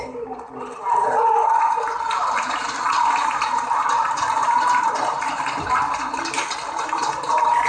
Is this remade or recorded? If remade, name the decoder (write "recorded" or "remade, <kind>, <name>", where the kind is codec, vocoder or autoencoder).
recorded